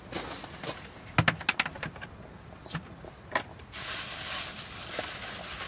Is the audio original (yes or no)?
yes